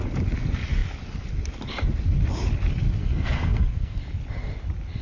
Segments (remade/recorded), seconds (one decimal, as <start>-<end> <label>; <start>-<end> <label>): 0.0-3.0 recorded; 3.0-4.0 remade; 4.0-5.0 recorded